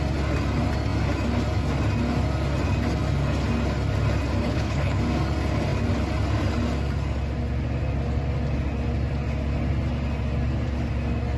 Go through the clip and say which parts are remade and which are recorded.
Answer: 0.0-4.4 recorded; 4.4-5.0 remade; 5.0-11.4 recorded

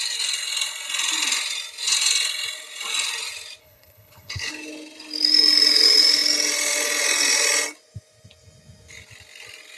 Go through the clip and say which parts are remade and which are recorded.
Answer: 0.0-3.6 recorded; 3.6-4.5 remade; 4.5-9.8 recorded

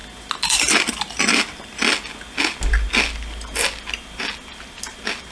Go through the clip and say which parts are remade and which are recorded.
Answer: 0.0-5.3 recorded

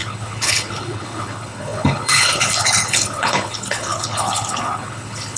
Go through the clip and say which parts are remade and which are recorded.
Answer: 0.0-5.4 remade

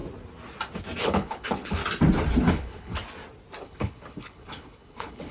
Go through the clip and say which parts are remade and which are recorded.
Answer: 0.0-1.0 recorded; 1.0-1.8 remade; 1.8-2.5 recorded; 2.5-3.0 remade; 3.0-3.6 recorded; 3.6-5.3 remade

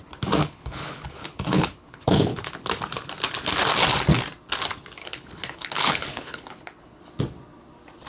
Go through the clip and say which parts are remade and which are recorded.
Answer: 0.0-0.4 recorded; 0.4-2.5 remade; 2.5-5.0 recorded; 5.0-7.0 remade; 7.0-8.1 recorded

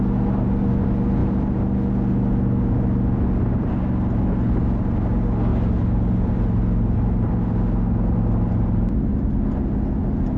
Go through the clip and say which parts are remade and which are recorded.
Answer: 0.0-10.4 recorded